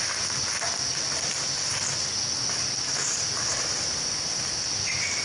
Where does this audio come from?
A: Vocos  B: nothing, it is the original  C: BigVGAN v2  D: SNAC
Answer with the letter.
B